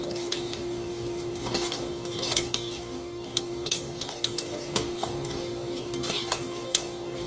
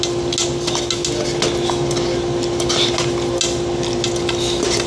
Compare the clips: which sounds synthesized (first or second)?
first